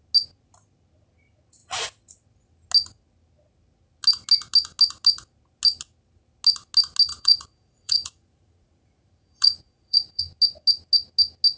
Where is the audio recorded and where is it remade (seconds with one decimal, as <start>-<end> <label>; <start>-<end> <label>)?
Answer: 0.0-7.1 recorded; 7.1-10.2 remade; 10.2-11.6 recorded